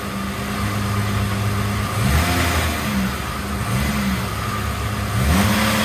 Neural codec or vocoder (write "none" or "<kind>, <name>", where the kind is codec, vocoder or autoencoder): none